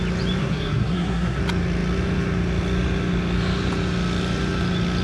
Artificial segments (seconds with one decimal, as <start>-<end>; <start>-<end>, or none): 0.4-1.4